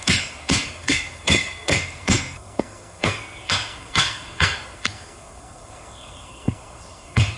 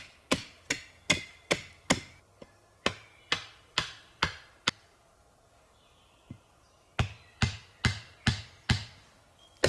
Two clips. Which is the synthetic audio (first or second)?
first